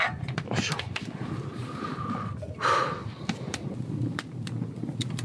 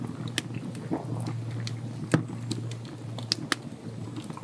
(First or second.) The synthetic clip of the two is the first